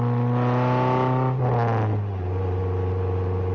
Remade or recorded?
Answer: recorded